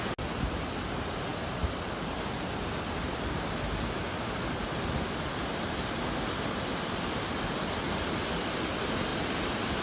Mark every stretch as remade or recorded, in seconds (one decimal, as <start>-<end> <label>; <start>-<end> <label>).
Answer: 0.0-9.8 recorded